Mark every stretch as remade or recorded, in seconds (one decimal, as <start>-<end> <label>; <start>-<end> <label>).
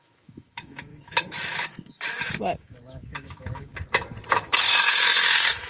0.0-3.7 remade; 3.7-4.3 recorded; 4.3-5.7 remade